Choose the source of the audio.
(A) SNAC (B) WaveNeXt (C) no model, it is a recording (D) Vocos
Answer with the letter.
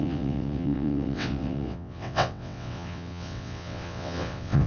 B